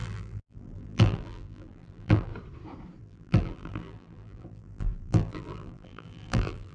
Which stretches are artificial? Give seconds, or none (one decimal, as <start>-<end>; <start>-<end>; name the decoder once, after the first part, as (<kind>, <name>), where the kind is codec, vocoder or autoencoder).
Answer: 0.0-2.3 (vocoder, BigVGAN v2); 3.0-6.7